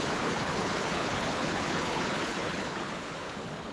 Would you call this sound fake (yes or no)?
yes